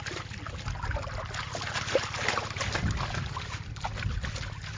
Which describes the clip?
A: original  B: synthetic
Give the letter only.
A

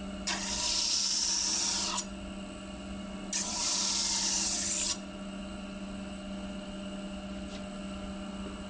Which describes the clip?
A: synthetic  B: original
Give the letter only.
B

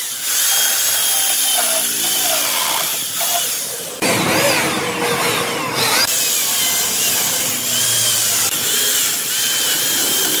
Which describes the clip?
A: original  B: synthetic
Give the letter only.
A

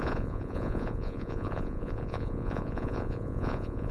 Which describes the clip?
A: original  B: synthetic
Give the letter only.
B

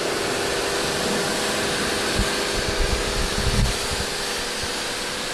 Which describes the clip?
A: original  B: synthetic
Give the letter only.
A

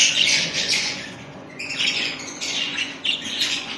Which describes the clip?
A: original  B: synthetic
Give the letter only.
B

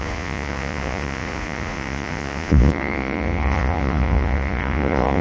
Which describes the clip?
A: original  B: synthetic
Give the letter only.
B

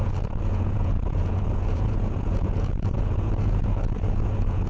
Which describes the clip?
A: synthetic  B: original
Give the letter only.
A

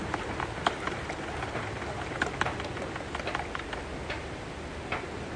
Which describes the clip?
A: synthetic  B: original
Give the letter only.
B